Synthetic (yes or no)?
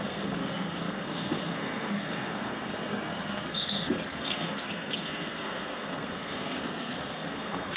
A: yes